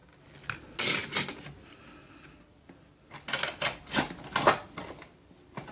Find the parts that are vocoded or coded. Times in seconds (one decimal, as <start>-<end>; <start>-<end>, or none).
none